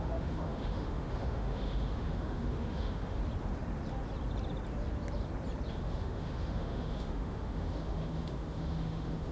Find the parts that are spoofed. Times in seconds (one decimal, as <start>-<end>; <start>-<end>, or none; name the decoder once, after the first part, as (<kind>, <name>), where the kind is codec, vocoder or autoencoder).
0.0-3.2 (autoencoder, DAC-VAE); 5.7-9.3

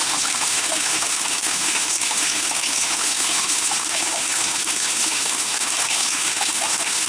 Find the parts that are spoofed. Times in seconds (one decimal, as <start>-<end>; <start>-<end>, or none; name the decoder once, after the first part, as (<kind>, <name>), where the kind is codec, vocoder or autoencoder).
0.0-7.1 (autoencoder, DAC-VAE)